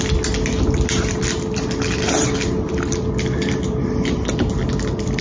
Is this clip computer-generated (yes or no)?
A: no